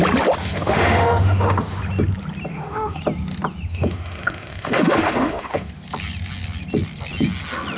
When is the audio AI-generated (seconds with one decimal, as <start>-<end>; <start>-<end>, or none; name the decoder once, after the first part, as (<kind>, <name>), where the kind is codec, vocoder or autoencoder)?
0.4-1.8 (autoencoder, DAC-VAE); 2.5-3.0; 3.7-5.7